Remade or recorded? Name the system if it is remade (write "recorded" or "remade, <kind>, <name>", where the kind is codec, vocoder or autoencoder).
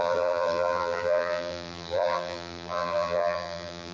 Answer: remade, vocoder, BigVGAN v2